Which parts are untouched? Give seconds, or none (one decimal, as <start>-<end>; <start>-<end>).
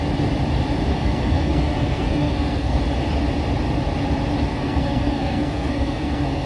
0.0-0.9; 2.8-4.5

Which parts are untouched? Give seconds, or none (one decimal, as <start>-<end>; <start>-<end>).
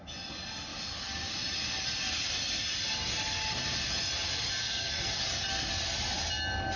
0.0-4.6; 5.1-6.8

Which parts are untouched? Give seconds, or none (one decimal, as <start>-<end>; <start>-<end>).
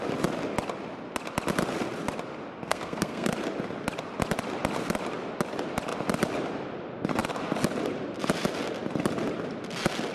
0.0-2.7; 3.3-10.1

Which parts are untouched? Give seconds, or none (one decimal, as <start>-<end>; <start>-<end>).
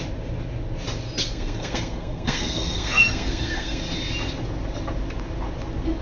0.0-1.2; 3.8-6.0